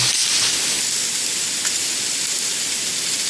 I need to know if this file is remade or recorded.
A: recorded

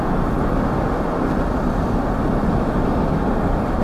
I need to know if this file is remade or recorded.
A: recorded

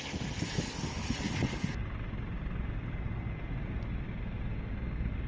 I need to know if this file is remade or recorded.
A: recorded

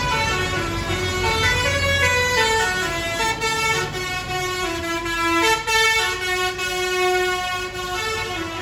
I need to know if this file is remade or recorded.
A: recorded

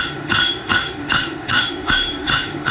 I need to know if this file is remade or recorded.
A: remade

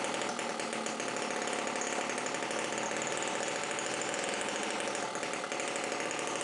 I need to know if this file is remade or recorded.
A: recorded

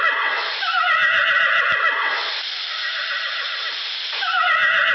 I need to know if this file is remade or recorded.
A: recorded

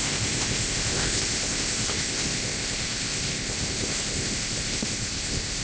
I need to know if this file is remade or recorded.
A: remade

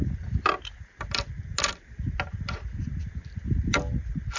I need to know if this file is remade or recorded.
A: recorded